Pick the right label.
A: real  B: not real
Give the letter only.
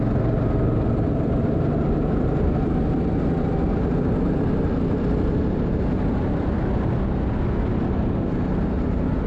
A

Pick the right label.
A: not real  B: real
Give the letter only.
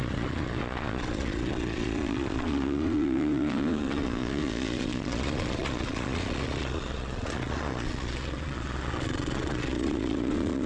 A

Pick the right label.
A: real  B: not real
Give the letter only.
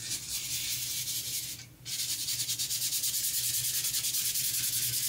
A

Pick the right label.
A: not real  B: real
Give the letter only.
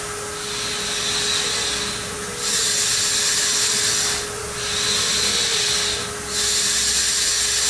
B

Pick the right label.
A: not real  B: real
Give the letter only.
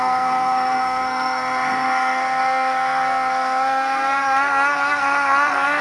A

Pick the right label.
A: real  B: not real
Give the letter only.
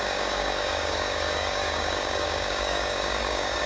B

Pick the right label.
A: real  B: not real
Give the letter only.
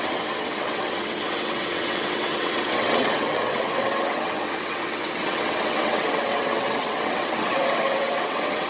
B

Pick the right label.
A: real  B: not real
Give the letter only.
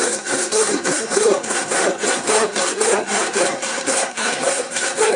B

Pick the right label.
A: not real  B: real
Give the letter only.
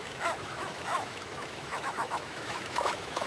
A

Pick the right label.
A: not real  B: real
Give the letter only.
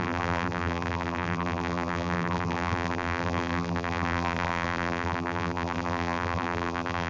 A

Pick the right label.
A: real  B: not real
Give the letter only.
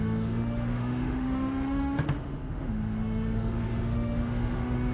B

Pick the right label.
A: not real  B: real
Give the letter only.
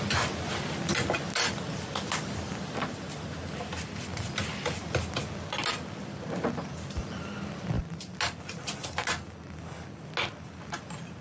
B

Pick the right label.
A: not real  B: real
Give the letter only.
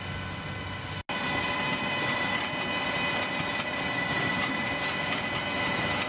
B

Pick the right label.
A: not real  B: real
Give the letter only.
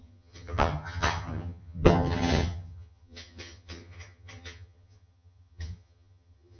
A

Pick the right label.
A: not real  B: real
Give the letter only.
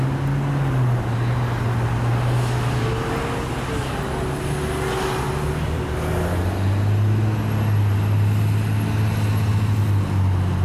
B